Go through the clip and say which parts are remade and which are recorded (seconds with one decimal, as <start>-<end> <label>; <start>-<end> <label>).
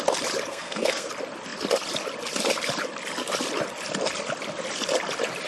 0.0-0.5 recorded; 0.5-1.1 remade; 1.1-5.5 recorded